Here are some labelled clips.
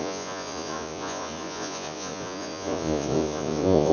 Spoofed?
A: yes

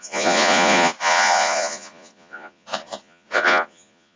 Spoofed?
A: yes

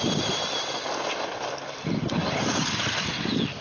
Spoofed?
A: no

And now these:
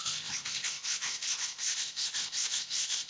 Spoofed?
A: yes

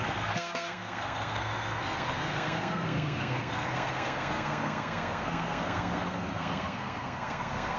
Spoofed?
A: yes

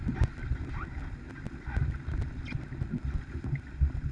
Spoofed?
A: no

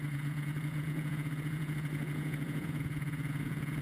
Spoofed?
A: yes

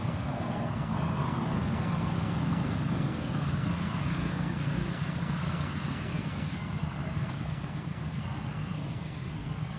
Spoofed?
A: yes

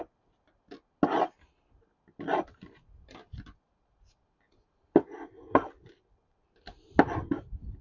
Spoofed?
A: no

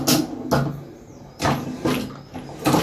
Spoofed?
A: no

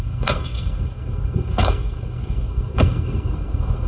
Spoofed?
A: yes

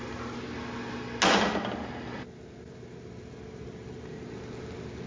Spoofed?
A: no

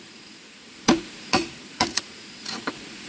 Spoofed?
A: yes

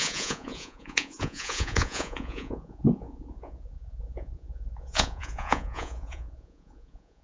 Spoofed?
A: yes